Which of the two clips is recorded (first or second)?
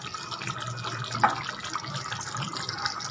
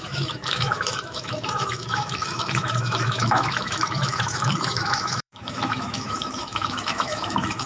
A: first